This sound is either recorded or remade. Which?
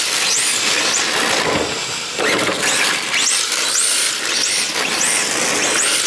recorded